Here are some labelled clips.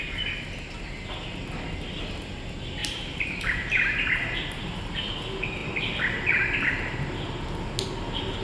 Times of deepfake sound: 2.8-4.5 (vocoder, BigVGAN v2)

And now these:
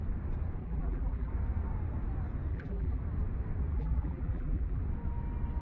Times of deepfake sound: 0.6-1.3 (vocoder, BigVGAN v2); 2.5-3.0; 3.7-4.8

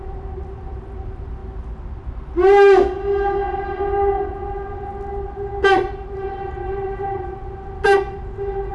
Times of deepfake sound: 0.0-1.4 (vocoder, BigVGAN v2); 6.6-7.4

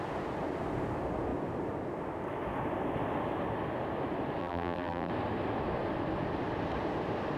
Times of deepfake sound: 4.4-5.1 (vocoder, BigVGAN v2)

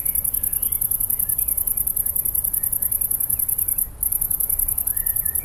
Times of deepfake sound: none

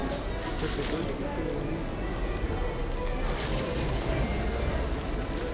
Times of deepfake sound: 3.3-5.5 (vocoder, BigVGAN v2)

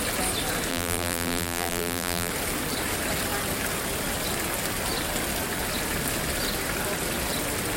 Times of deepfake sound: 0.7-2.3 (vocoder, BigVGAN v2)

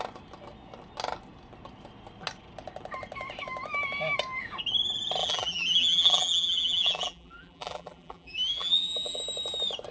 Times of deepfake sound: 5.2-9.2 (vocoder, BigVGAN v2)